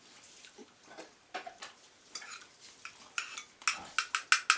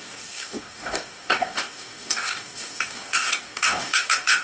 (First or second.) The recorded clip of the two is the first